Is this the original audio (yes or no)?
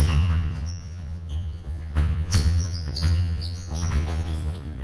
no